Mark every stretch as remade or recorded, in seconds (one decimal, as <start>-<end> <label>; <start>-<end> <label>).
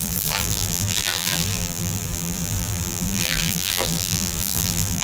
0.0-5.0 remade